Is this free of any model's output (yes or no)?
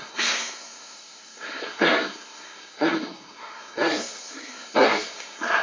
no